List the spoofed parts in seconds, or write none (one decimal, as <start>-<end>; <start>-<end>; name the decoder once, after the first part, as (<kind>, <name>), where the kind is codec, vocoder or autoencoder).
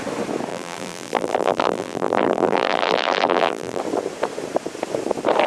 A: 0.5-3.8 (vocoder, BigVGAN v2)